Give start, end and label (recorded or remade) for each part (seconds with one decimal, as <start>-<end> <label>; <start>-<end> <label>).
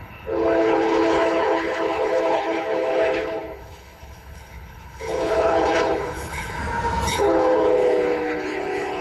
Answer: 0.0-6.6 remade; 6.6-7.1 recorded; 7.1-9.0 remade